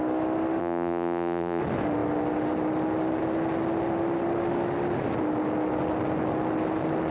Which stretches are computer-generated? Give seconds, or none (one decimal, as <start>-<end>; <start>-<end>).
0.6-1.6